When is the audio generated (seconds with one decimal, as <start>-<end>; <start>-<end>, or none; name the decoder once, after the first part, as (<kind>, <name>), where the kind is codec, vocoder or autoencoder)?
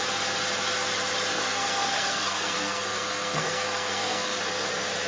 1.3-4.4 (codec, SNAC)